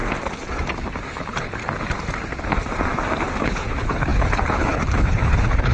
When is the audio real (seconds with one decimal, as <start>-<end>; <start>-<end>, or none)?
0.0-1.1; 1.6-3.4